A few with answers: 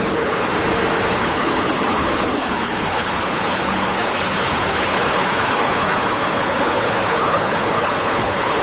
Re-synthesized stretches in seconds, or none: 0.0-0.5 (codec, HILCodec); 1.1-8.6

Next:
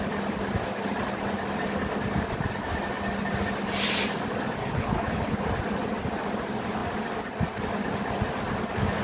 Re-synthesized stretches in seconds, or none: 4.6-5.4 (codec, HILCodec)

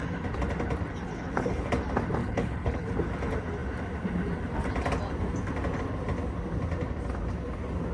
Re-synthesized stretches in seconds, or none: 1.1-1.7 (codec, HILCodec); 2.2-2.9

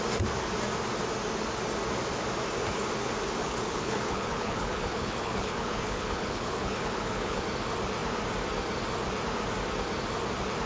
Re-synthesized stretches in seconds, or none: 3.4-7.4 (codec, HILCodec)

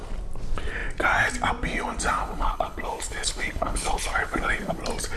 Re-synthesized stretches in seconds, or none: 2.2-4.8 (codec, HILCodec)

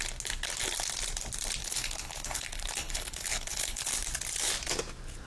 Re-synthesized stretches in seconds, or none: 1.6-3.9 (codec, HILCodec)